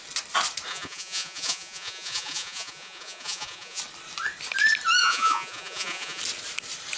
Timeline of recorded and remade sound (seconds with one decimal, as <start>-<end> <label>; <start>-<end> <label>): 0.0-0.7 recorded; 0.7-3.8 remade; 3.8-5.0 recorded; 5.0-6.2 remade; 6.2-7.0 recorded